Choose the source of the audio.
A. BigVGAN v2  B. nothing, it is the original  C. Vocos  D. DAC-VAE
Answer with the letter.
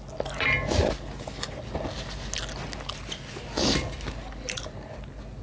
B